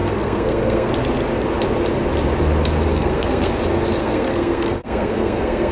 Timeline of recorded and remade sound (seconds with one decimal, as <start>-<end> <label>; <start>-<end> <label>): 0.0-0.9 remade; 0.9-2.9 recorded; 2.9-3.5 remade; 3.5-4.0 recorded; 4.0-5.7 remade